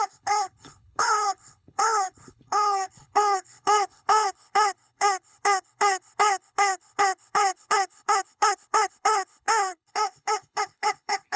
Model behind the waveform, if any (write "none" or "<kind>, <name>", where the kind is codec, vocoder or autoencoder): codec, HILCodec